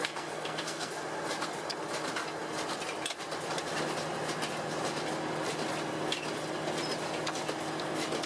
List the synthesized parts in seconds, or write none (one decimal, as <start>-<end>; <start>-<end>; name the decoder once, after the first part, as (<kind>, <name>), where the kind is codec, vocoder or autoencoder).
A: 0.0-0.9 (codec, SNAC)